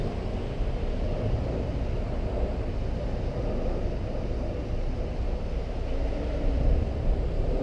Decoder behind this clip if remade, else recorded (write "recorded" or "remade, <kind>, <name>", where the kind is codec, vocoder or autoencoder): recorded